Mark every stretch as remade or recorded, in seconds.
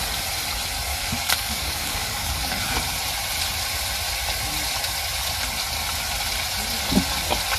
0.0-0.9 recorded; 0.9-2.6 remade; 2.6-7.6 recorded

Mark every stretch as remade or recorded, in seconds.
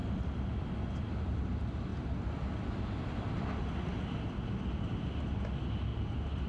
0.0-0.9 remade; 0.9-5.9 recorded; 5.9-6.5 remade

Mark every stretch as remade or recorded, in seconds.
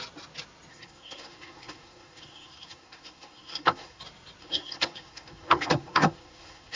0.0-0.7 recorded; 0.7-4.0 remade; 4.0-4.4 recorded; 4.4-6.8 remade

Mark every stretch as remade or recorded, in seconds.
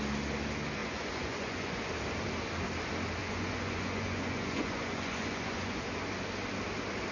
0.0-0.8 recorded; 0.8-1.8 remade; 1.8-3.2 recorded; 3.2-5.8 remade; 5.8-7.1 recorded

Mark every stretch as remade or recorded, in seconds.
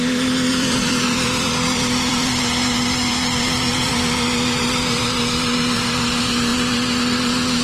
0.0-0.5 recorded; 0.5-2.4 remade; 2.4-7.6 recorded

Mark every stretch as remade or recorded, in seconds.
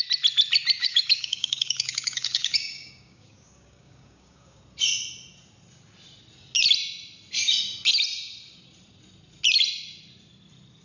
0.0-0.8 recorded; 0.8-4.6 remade; 4.6-10.8 recorded